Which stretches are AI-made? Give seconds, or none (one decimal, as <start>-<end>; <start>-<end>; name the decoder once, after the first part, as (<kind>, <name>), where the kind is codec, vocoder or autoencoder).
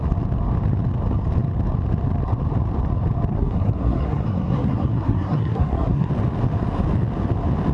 3.3-6.1 (codec, SNAC)